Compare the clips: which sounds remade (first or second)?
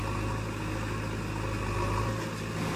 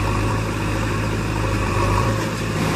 second